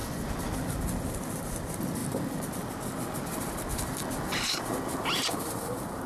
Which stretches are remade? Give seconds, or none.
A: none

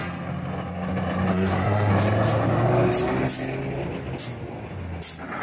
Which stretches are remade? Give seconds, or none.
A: 1.3-1.9 (codec, SNAC)

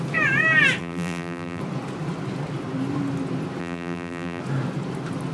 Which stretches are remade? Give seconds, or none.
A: 0.8-1.6 (vocoder, BigVGAN v2); 3.6-4.4

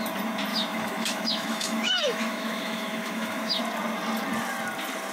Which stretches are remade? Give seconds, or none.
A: 0.5-3.6 (autoencoder, DAC-VAE)

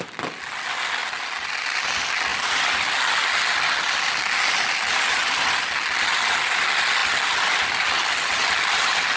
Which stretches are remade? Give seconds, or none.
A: none